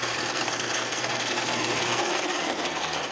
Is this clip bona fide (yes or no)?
no